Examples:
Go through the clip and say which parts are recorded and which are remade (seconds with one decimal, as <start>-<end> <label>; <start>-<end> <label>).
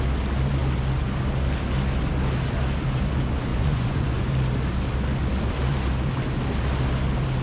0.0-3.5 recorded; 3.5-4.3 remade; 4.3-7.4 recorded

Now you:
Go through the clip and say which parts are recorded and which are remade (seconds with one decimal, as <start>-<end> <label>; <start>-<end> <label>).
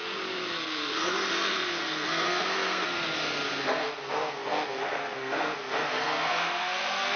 0.0-7.2 remade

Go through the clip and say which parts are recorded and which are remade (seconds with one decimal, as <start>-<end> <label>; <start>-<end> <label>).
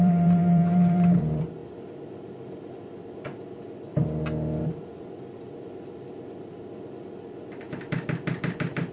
0.0-3.9 remade; 3.9-4.6 recorded; 4.6-8.9 remade